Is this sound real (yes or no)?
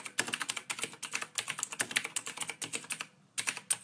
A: yes